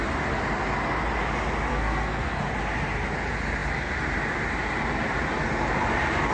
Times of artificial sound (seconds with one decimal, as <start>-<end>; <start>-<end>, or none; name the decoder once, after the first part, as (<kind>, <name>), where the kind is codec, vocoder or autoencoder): 1.7-2.4 (codec, SNAC)